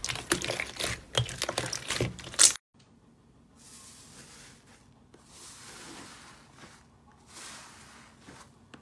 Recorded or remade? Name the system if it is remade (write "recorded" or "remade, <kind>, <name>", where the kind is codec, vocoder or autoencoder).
recorded